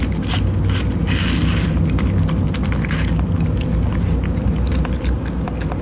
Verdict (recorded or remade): recorded